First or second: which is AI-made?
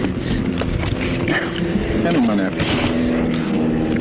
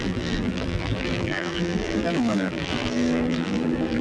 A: second